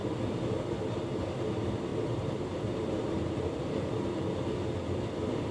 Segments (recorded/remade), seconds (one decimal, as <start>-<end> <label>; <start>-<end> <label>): 0.0-1.9 recorded; 1.9-3.5 remade; 3.5-5.5 recorded